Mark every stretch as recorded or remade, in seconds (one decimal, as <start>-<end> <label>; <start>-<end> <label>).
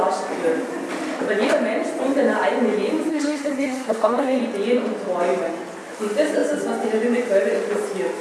0.0-3.1 recorded; 3.1-4.4 remade; 4.4-8.2 recorded